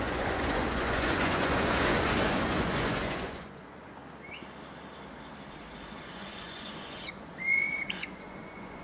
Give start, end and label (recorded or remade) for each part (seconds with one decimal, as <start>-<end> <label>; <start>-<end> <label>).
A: 0.0-4.0 remade; 4.0-5.9 recorded; 5.9-8.8 remade